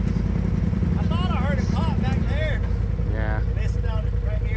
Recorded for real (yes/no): yes